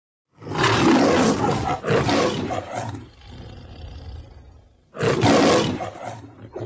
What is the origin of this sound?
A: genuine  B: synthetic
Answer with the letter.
A